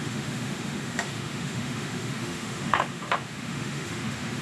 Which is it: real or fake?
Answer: fake